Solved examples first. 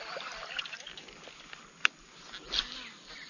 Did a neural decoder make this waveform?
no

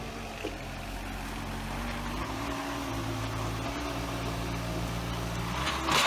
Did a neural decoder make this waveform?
no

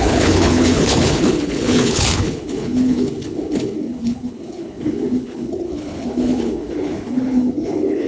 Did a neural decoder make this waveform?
yes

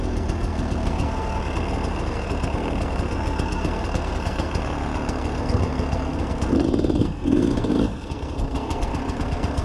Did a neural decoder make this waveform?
yes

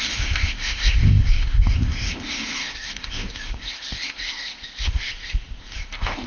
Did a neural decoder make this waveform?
yes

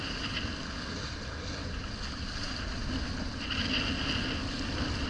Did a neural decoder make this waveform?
no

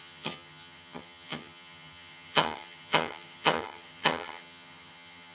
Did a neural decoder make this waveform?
yes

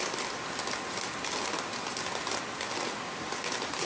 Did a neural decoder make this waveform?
no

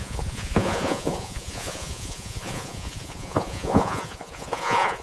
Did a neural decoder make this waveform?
yes